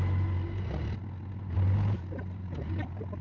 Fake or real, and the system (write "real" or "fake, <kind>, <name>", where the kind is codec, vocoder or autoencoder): real